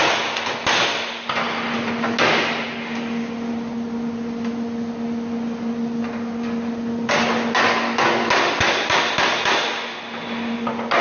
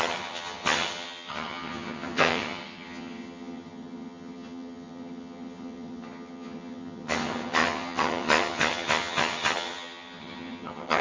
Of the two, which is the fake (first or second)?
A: second